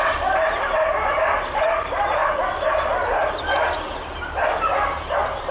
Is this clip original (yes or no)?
no